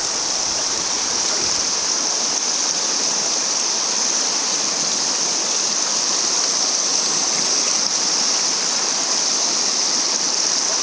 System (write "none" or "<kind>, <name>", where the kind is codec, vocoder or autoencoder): none